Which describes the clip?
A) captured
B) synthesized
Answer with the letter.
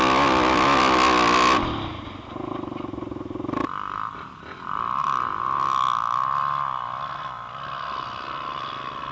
A